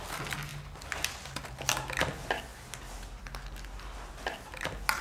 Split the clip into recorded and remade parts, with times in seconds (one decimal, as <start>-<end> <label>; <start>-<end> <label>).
0.0-5.0 recorded